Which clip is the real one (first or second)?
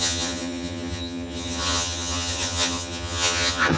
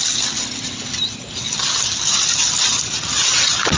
second